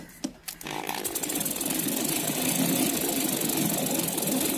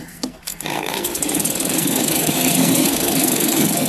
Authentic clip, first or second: first